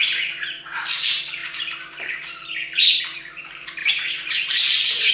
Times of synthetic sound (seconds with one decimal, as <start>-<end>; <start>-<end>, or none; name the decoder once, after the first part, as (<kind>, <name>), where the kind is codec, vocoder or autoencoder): 0.0-5.1 (vocoder, BigVGAN v2)